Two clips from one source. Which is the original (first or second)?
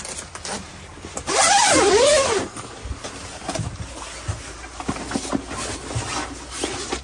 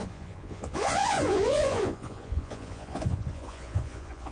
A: first